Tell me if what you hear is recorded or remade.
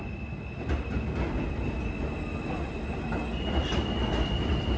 recorded